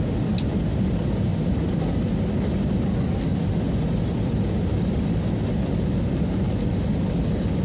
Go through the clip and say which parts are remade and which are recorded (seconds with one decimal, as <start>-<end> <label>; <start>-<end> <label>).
0.0-1.3 recorded; 1.3-1.8 remade; 1.8-7.6 recorded